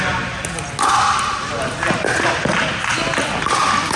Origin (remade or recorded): recorded